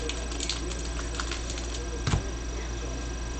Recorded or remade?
recorded